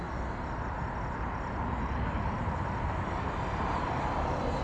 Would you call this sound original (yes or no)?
yes